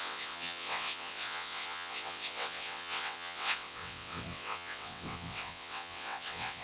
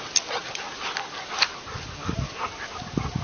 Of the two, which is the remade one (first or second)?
first